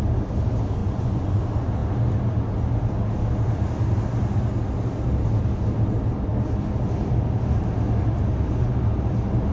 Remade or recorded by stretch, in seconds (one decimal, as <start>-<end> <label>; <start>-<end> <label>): 0.0-0.8 recorded; 0.8-1.4 remade; 1.4-9.5 recorded